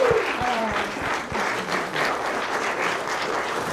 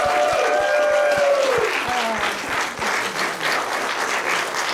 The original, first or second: second